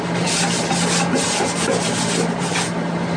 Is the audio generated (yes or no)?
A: no